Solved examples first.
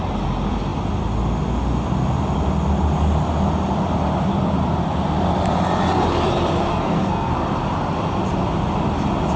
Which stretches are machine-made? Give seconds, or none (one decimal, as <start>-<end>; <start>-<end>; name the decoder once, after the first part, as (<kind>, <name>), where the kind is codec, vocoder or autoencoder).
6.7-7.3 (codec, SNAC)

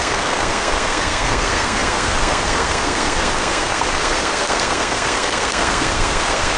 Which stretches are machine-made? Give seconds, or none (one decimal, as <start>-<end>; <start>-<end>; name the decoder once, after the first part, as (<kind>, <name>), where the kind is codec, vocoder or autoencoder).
0.0-6.6 (codec, SNAC)

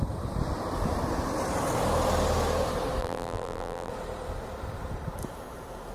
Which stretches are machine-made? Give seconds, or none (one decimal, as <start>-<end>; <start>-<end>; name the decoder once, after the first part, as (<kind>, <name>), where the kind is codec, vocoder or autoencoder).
3.0-3.9 (vocoder, BigVGAN v2)

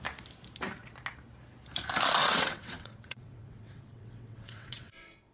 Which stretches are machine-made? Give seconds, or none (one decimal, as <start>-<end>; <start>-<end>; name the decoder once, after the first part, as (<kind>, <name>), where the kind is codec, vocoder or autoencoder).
2.2-5.3 (vocoder, WaveNeXt)